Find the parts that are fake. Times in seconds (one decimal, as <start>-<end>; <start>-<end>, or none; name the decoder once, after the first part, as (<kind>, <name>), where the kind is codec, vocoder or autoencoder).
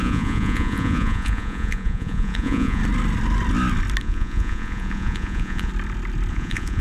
0.0-2.8 (vocoder, Vocos); 4.0-5.7; 6.3-6.8